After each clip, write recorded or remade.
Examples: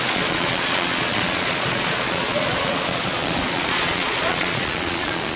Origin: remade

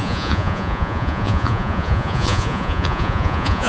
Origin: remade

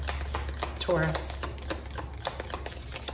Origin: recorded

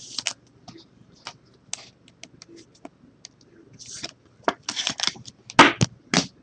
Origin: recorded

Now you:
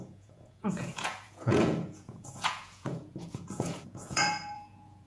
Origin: remade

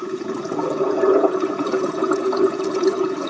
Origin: remade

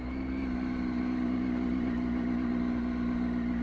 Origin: recorded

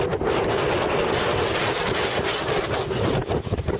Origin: recorded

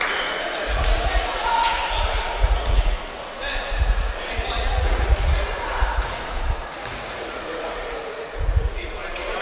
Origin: remade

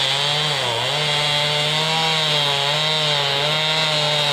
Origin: recorded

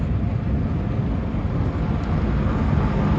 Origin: recorded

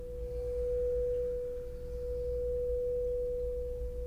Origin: recorded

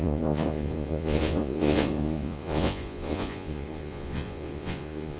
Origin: remade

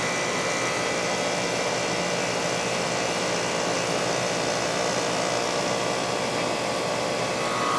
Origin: recorded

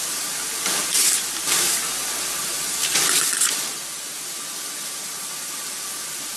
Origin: recorded